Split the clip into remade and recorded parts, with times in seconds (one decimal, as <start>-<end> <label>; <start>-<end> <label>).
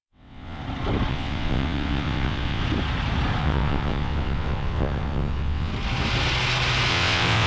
0.0-0.6 remade; 0.6-1.1 recorded; 1.1-2.6 remade; 2.6-3.4 recorded; 3.4-5.7 remade; 5.7-6.9 recorded; 6.9-7.5 remade